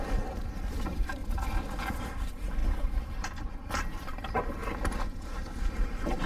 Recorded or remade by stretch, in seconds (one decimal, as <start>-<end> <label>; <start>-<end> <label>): 0.0-1.2 remade; 1.2-2.0 recorded; 2.0-4.6 remade; 4.6-5.7 recorded; 5.7-6.3 remade